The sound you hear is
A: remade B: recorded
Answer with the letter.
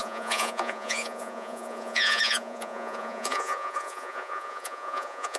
A